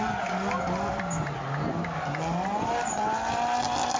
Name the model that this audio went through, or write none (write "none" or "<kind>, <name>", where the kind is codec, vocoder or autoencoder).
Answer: none